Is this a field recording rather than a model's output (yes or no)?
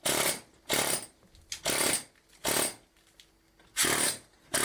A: yes